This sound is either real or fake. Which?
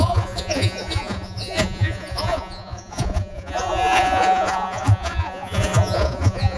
fake